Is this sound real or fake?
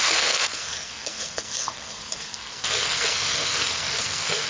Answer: fake